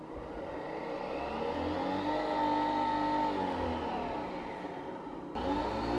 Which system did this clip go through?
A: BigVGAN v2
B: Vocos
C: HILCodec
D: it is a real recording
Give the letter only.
D